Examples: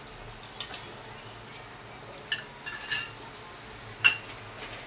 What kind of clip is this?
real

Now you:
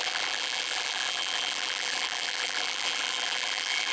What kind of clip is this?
fake